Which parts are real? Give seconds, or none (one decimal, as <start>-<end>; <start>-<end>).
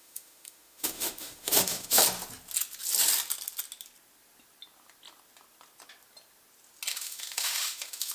2.0-6.9